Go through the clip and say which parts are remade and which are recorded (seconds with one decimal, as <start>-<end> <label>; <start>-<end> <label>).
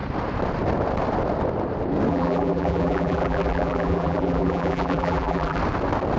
0.0-2.1 recorded; 2.1-5.6 remade; 5.6-6.2 recorded